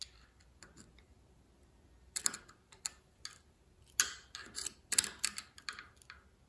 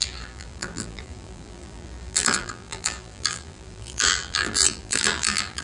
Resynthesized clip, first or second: second